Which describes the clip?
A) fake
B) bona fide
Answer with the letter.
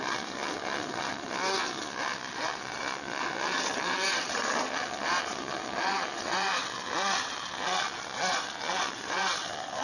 A